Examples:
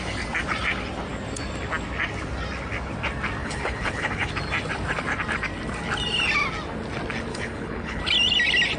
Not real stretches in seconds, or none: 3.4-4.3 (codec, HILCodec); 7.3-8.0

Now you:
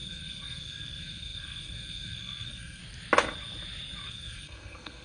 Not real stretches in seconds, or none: 0.0-2.8 (codec, SNAC); 4.1-5.0

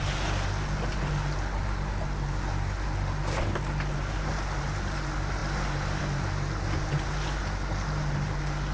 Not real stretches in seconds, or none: none

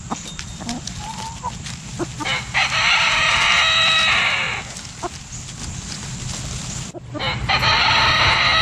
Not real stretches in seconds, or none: none

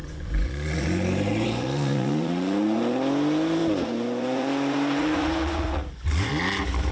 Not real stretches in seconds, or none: 0.0-3.0 (vocoder, Vocos); 3.6-6.3